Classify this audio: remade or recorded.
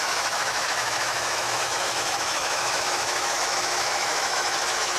remade